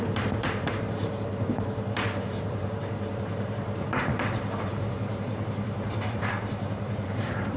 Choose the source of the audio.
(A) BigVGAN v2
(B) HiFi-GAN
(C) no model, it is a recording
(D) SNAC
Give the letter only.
A